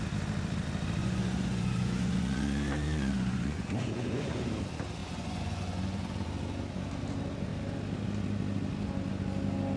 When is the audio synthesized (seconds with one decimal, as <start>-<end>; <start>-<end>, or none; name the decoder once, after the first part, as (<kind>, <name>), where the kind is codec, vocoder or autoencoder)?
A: 1.0-4.4 (vocoder, Vocos); 5.0-6.3